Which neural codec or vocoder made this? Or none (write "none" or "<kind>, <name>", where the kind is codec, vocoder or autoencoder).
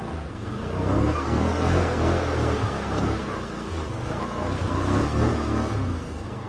codec, SNAC